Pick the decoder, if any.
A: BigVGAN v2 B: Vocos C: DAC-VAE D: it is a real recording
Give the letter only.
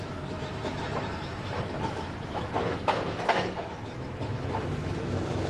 C